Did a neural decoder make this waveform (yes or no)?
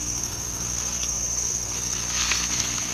yes